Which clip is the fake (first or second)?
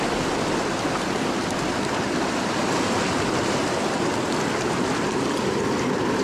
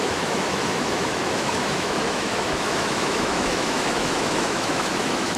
second